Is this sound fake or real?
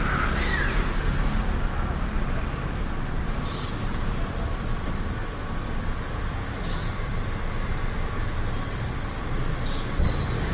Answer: real